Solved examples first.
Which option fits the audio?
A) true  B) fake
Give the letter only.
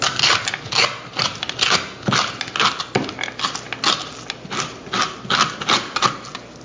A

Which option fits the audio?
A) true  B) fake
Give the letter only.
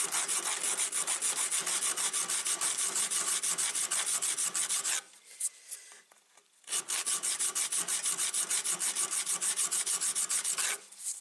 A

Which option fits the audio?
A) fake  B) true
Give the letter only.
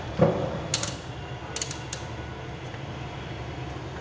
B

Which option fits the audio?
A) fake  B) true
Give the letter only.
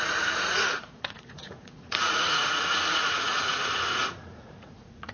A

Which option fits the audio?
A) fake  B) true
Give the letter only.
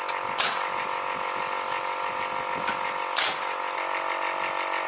B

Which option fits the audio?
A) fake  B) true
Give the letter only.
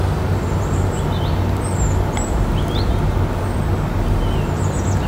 B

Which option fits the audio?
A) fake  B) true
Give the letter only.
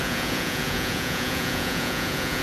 A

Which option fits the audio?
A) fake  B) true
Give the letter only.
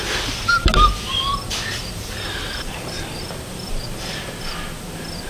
B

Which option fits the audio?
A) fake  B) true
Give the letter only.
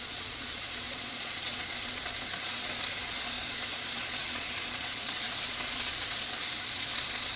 A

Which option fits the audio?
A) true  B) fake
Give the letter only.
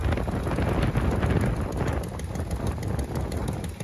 A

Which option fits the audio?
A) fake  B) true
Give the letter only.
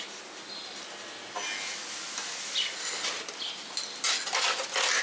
B